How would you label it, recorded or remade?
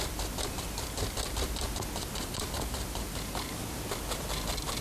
recorded